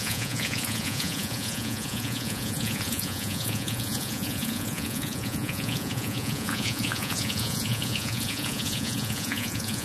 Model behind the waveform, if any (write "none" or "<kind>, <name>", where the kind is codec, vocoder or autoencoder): vocoder, Vocos